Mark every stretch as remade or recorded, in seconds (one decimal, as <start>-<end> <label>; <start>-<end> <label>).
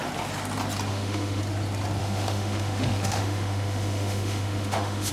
0.0-0.9 recorded; 0.9-1.4 remade; 1.4-2.0 recorded; 2.0-5.1 remade